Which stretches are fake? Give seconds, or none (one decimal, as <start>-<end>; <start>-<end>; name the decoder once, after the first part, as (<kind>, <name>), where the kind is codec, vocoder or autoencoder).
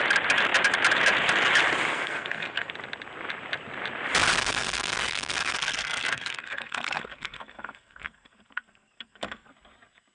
1.9-2.7 (codec, SNAC); 4.4-9.5